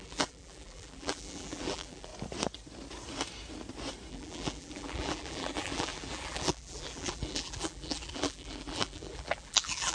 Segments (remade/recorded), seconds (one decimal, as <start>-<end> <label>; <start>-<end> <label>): 0.0-2.1 remade; 2.1-4.1 recorded; 4.1-9.9 remade